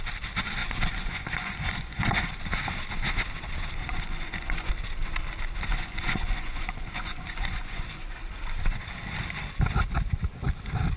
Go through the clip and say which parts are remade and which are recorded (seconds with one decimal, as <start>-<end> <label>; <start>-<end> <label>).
0.0-0.6 recorded; 0.6-2.3 remade; 2.3-3.8 recorded; 3.8-4.7 remade; 4.7-5.7 recorded; 5.7-8.2 remade; 8.2-11.0 recorded